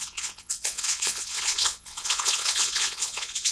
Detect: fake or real fake